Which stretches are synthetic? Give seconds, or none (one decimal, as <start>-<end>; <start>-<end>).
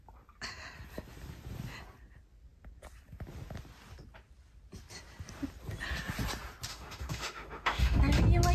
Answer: 6.7-8.0